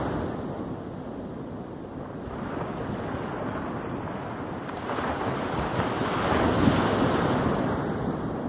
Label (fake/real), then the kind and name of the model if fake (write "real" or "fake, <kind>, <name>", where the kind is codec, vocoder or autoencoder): real